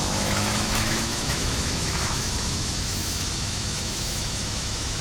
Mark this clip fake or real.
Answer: fake